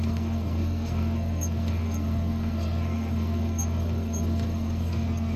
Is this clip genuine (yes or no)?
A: no